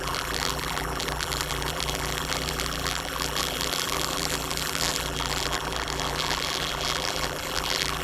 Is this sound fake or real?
fake